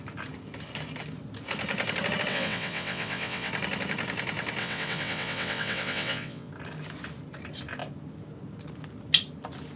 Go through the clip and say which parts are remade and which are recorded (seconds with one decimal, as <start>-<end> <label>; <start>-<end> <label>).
0.0-2.3 recorded; 2.3-3.5 remade; 3.5-4.6 recorded; 4.6-6.5 remade; 6.5-9.8 recorded